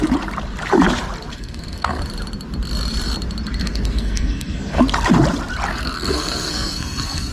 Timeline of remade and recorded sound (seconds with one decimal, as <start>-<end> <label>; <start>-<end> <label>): 0.0-1.3 recorded; 1.3-2.0 remade; 2.0-3.6 recorded; 3.6-4.8 remade; 4.8-5.7 recorded; 5.7-7.3 remade